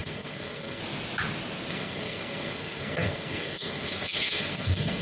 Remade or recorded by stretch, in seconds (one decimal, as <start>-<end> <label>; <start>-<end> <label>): 0.0-0.8 remade; 0.8-1.7 recorded; 1.7-5.0 remade